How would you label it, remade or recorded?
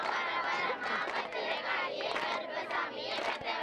recorded